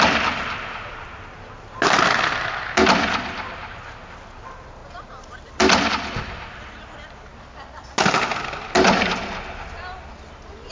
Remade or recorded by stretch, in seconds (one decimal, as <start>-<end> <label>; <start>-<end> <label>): 0.0-10.7 recorded